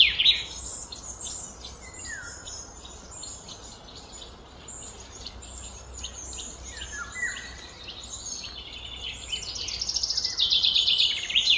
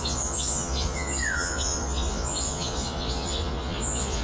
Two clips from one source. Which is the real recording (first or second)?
first